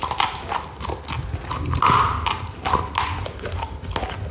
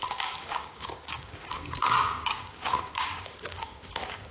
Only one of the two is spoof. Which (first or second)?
second